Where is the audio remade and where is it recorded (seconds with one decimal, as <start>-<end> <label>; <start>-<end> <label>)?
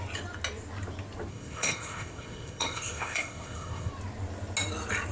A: 0.0-1.3 recorded; 1.3-3.9 remade; 3.9-5.1 recorded